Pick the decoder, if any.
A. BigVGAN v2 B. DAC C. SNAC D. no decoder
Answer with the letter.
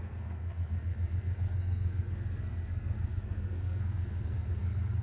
C